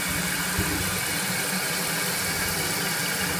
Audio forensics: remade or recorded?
recorded